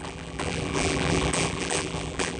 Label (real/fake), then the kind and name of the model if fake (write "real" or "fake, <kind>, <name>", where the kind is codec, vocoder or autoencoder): fake, vocoder, BigVGAN v2